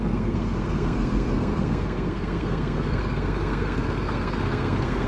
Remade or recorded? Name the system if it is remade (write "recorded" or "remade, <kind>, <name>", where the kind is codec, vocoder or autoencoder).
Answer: remade, codec, SNAC